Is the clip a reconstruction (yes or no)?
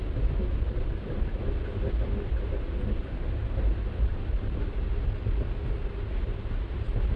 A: no